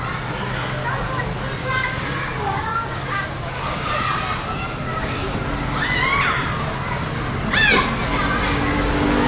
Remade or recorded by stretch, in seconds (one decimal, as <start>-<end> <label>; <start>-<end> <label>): 0.0-1.6 recorded; 1.6-3.9 remade; 3.9-4.9 recorded; 4.9-5.8 remade; 5.8-9.3 recorded